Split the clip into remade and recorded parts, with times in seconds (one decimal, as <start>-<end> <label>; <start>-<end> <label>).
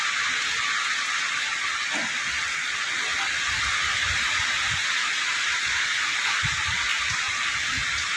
0.0-3.1 recorded; 3.1-4.6 remade; 4.6-6.9 recorded; 6.9-7.5 remade; 7.5-8.2 recorded